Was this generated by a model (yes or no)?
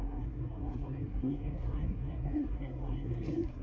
yes